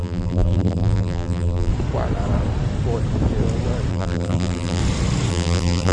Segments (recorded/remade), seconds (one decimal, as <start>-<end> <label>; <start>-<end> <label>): 0.0-1.7 remade; 1.7-3.9 recorded; 3.9-4.8 remade; 4.8-5.3 recorded; 5.3-5.9 remade